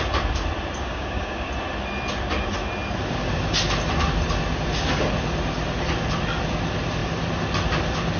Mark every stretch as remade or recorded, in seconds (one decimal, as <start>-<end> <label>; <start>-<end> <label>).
0.0-0.8 recorded; 0.8-1.5 remade; 1.5-8.2 recorded